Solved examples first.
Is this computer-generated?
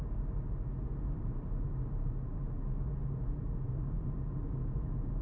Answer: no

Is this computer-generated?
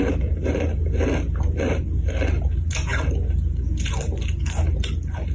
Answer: no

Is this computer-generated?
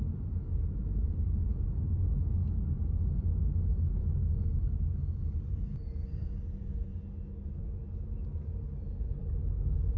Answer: no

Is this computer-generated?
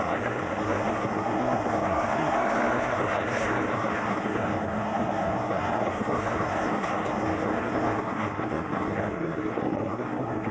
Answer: yes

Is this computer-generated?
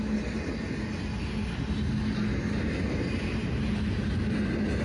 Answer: no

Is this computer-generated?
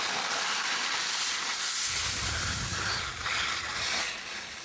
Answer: no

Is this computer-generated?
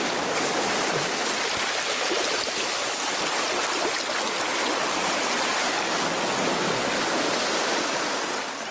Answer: no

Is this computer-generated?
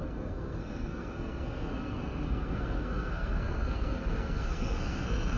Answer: yes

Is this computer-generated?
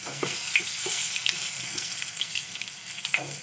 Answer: yes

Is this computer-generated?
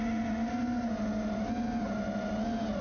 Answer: no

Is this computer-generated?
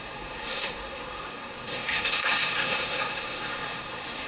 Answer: yes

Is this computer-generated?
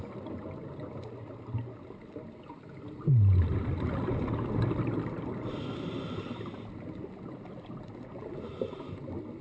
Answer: no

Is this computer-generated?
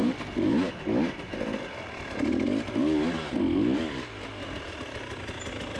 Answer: no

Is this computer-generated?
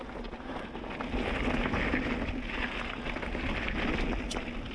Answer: no